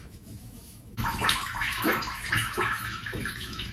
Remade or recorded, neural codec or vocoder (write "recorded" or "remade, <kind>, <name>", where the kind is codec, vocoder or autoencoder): remade, autoencoder, DAC-VAE